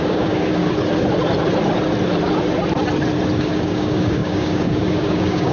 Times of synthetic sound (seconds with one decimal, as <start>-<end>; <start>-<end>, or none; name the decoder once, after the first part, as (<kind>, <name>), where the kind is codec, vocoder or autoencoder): 0.0-0.6 (codec, DAC); 3.4-5.5